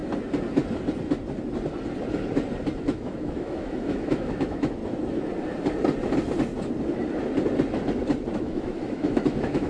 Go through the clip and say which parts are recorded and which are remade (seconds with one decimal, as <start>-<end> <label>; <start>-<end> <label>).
0.0-2.8 recorded; 2.8-4.8 remade; 4.8-8.4 recorded; 8.4-9.7 remade